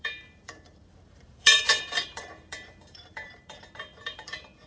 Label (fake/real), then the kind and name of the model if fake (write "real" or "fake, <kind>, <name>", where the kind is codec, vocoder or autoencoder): fake, vocoder, BigVGAN v2